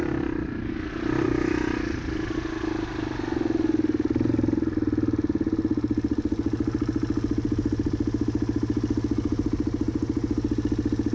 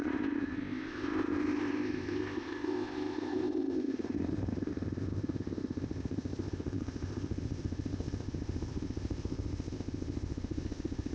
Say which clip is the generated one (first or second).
second